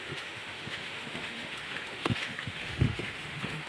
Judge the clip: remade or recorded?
remade